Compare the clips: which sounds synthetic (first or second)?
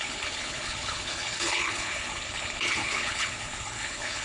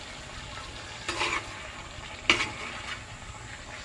first